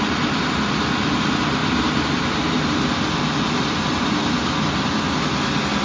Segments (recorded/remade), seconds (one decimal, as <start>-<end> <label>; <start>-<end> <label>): 0.0-5.8 recorded